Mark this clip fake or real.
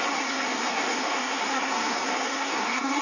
fake